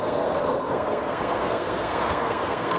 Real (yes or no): no